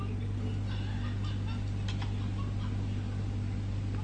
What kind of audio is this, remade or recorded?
recorded